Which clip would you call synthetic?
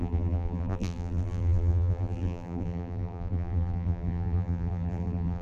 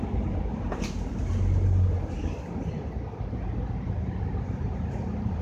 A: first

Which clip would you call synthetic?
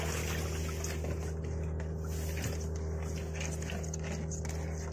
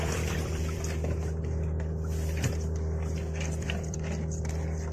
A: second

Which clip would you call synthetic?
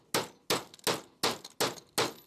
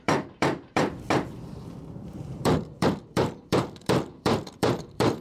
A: second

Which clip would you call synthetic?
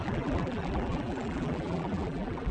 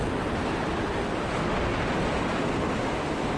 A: first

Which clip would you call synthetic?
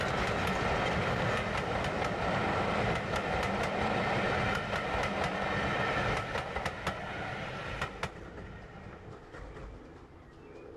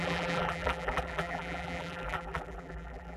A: second